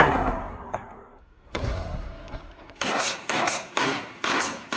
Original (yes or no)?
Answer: no